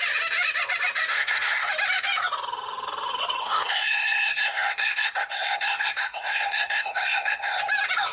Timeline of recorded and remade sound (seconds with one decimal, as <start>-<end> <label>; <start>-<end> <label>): 0.0-1.1 recorded; 1.1-1.7 remade; 1.7-3.4 recorded; 3.4-7.6 remade; 7.6-8.1 recorded

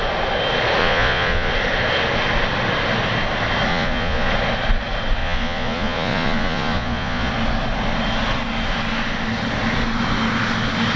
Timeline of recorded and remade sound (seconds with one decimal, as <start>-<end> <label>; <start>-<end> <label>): 0.0-0.8 recorded; 0.8-1.5 remade; 1.5-3.7 recorded; 3.7-4.3 remade; 4.3-5.2 recorded; 5.2-7.3 remade; 7.3-11.0 recorded

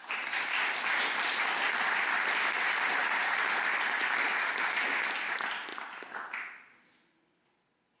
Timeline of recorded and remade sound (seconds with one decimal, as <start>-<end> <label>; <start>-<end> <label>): 0.0-3.0 recorded; 3.0-3.6 remade; 3.6-8.0 recorded

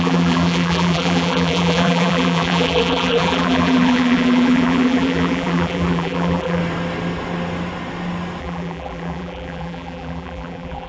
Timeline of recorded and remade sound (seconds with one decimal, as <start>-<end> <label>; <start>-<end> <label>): 0.0-6.6 remade; 6.6-8.4 recorded; 8.4-10.9 remade

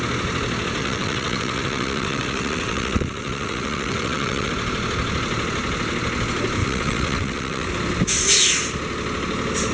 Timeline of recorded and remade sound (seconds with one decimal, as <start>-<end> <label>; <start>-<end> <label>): 0.0-0.8 recorded; 0.8-4.5 remade; 4.5-6.6 recorded; 6.6-7.7 remade; 7.7-9.7 recorded

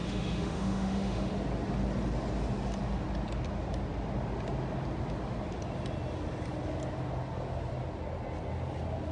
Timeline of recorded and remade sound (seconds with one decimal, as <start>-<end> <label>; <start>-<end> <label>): 0.0-1.3 remade; 1.3-9.1 recorded

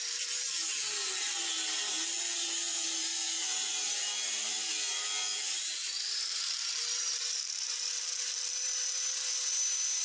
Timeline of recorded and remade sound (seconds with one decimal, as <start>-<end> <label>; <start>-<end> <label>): 0.0-2.7 recorded; 2.7-4.7 remade; 4.7-5.8 recorded; 5.8-8.5 remade; 8.5-10.0 recorded

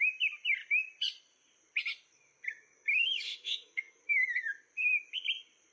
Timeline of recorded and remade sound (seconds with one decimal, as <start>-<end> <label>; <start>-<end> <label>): 0.0-2.7 recorded; 2.7-4.0 remade; 4.0-5.7 recorded